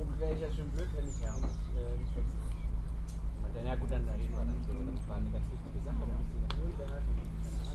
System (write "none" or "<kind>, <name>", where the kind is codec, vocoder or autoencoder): none